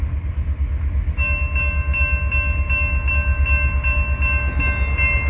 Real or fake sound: real